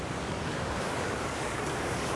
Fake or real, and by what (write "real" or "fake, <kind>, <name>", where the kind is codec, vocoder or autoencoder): fake, codec, DAC